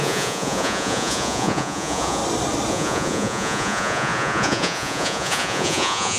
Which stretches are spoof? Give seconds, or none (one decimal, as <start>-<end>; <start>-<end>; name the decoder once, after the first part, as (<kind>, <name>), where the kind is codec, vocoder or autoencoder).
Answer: 0.0-2.2 (vocoder, Vocos); 2.7-6.2